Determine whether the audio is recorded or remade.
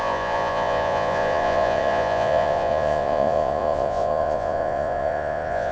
remade